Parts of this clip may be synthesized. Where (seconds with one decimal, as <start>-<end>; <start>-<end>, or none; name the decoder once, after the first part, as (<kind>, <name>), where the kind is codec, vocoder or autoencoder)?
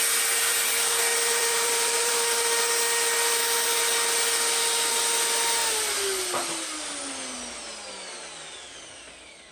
1.1-2.7 (vocoder, BigVGAN v2)